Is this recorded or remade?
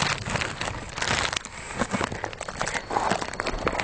recorded